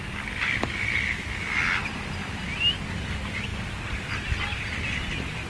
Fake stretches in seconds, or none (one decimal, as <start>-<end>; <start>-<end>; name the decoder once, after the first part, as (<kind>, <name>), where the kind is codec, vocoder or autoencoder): none